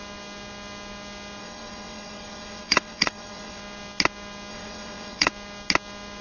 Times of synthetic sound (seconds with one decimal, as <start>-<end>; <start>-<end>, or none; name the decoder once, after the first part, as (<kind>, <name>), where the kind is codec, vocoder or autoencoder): 1.4-3.6 (vocoder, WaveNeXt); 4.5-5.3